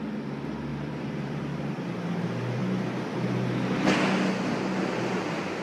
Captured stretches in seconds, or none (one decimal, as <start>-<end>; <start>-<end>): 0.0-0.7; 1.4-5.6